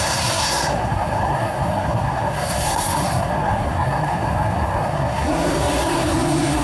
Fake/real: fake